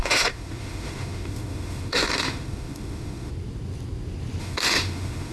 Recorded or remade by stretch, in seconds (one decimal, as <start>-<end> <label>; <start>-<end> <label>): 0.0-3.3 remade; 3.3-4.4 recorded; 4.4-5.3 remade

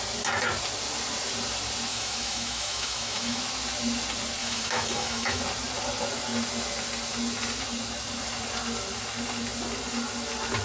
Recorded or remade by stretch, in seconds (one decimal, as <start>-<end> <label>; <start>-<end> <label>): 0.0-1.9 recorded; 1.9-3.4 remade; 3.4-4.4 recorded; 4.4-5.4 remade; 5.4-10.6 recorded

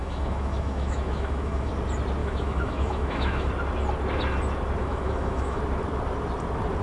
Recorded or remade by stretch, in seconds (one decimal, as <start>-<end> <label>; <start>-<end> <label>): 0.0-1.7 remade; 1.7-2.2 recorded; 2.2-3.5 remade; 3.5-4.8 recorded; 4.8-5.6 remade; 5.6-6.8 recorded